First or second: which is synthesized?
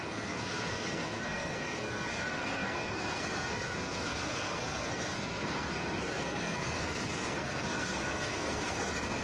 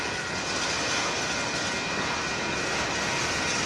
first